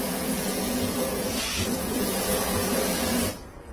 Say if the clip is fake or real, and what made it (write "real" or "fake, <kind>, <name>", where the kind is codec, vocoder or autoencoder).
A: fake, vocoder, Vocos